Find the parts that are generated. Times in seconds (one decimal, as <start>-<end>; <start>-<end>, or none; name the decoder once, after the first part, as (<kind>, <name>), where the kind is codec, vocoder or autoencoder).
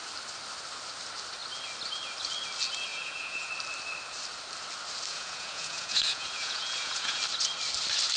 2.9-3.5 (vocoder, Vocos); 5.1-7.2